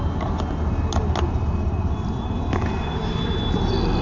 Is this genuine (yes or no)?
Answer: yes